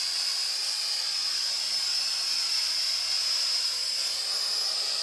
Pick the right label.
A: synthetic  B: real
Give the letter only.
B